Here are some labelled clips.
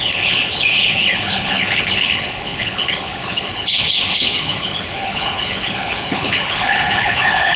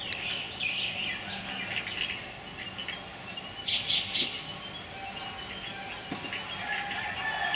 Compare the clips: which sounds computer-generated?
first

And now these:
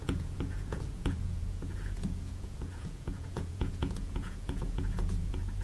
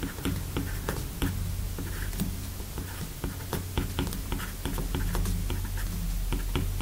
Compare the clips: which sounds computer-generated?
first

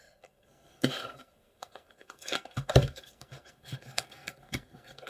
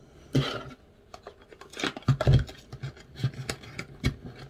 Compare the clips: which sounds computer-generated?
first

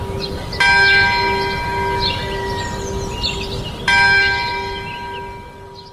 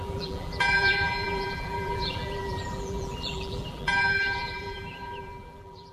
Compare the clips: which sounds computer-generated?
second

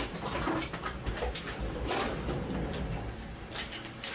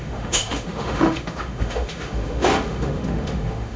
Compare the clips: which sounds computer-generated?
second